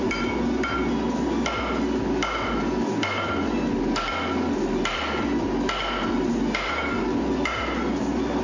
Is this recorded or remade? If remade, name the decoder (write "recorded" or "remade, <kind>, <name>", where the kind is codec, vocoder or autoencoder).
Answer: recorded